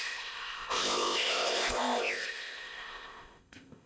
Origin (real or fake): fake